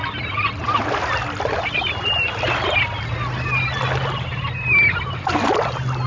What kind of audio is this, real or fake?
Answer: real